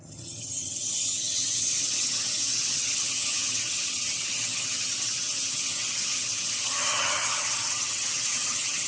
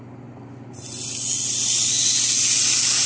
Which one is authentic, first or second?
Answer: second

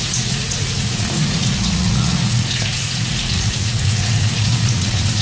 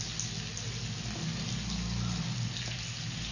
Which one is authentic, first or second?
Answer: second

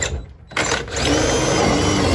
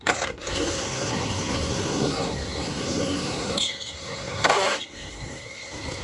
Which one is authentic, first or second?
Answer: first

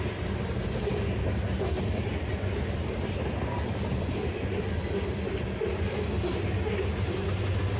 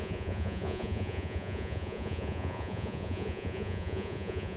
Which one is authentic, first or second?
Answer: first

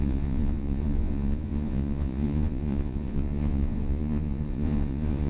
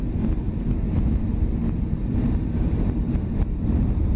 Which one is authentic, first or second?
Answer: second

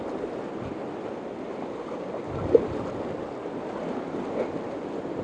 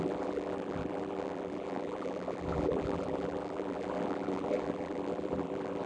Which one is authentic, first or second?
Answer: first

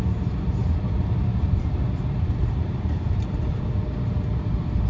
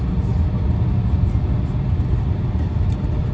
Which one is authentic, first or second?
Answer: second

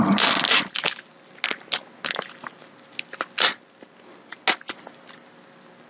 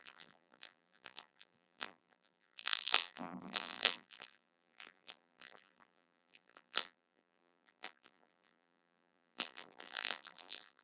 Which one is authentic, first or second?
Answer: first